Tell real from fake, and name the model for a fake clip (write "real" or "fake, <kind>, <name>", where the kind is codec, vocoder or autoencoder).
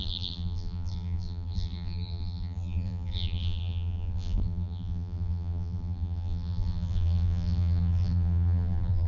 fake, vocoder, BigVGAN v2